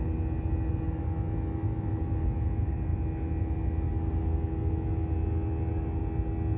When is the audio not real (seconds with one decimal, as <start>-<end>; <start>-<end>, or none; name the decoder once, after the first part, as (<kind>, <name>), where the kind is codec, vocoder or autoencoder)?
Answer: none